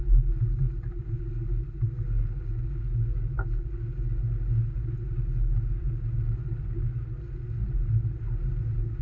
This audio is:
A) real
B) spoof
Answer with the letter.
A